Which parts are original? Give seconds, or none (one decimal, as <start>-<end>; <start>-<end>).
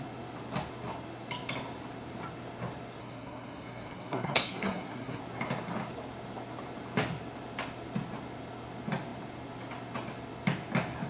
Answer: 0.0-3.0; 5.2-11.1